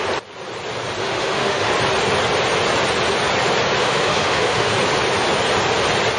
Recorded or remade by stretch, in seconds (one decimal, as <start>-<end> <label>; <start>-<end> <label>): 0.0-1.0 recorded; 1.0-1.7 remade; 1.7-3.8 recorded; 3.8-4.7 remade; 4.7-6.2 recorded